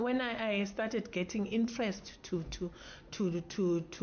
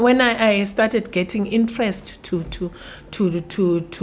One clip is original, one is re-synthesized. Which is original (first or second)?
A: second